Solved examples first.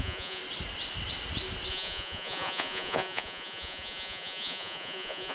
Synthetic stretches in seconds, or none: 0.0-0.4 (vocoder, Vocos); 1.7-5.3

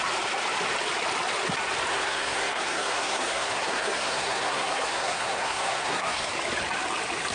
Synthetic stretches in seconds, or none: 1.9-6.3 (codec, SNAC)